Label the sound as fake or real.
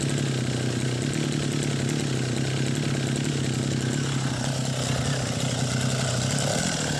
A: real